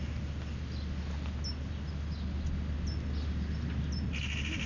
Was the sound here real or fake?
real